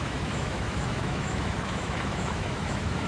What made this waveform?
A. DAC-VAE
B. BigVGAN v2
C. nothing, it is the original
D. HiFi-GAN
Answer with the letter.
A